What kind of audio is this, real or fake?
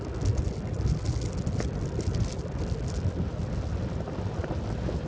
real